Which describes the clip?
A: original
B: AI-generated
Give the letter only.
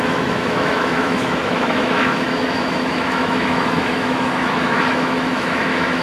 B